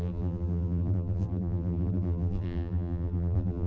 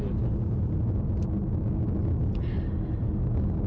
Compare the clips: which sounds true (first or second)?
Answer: second